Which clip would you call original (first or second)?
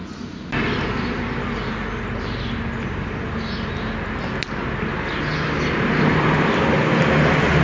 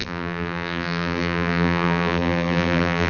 first